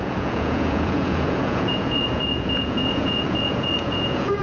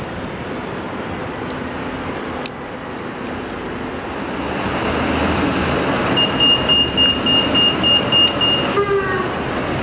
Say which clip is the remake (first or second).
first